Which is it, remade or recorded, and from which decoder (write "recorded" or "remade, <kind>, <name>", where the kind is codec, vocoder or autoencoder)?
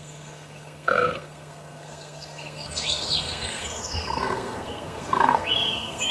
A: remade, codec, SNAC